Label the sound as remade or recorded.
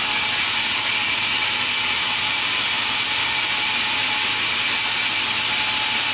recorded